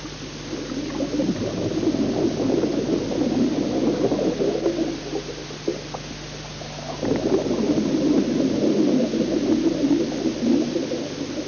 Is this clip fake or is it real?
real